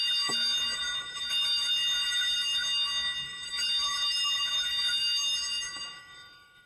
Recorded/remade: remade